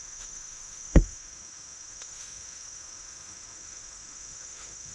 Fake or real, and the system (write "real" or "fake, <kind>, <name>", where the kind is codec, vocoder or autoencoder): fake, autoencoder, DAC-VAE